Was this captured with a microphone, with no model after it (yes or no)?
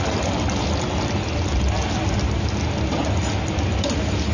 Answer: yes